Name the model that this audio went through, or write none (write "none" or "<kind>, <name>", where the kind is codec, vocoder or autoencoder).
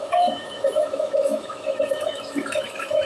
autoencoder, DAC-VAE